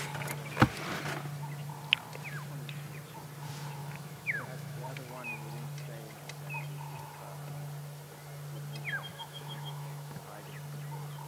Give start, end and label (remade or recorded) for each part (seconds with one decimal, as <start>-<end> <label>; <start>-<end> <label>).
0.0-3.8 recorded; 3.8-4.8 remade; 4.8-9.1 recorded; 9.1-10.2 remade; 10.2-11.3 recorded